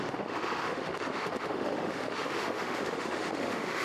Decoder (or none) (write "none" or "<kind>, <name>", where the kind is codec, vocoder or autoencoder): autoencoder, DAC-VAE